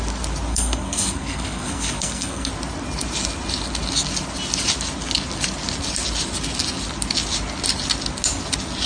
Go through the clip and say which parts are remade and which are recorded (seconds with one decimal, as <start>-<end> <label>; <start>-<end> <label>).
0.0-0.5 recorded; 0.5-2.5 remade; 2.5-8.9 recorded